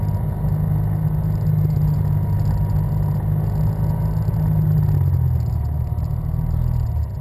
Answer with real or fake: real